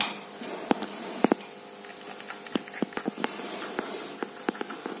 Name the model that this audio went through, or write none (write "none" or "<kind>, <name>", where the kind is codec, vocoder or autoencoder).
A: none